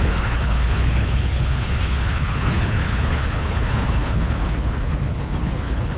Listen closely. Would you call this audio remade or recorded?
remade